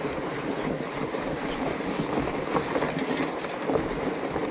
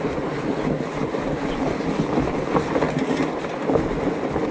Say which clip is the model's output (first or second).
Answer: first